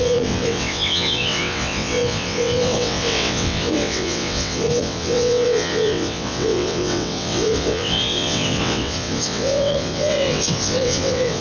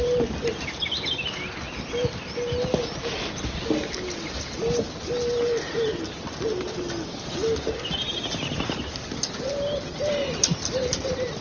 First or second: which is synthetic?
first